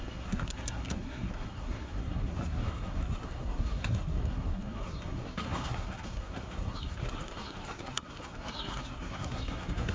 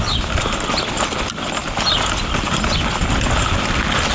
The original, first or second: second